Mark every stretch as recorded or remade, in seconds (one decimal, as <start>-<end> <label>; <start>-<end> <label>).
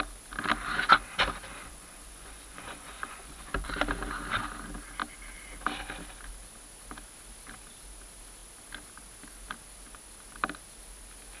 0.0-1.6 recorded; 1.6-3.7 remade; 3.7-11.4 recorded